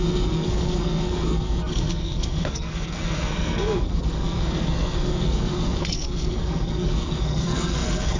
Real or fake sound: fake